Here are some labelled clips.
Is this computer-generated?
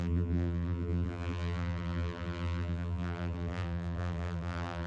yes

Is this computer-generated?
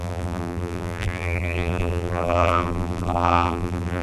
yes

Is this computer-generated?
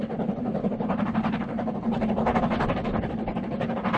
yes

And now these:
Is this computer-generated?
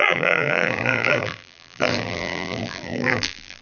yes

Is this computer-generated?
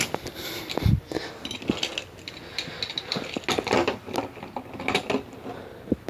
no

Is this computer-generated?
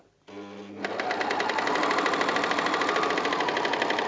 no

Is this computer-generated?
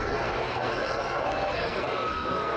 yes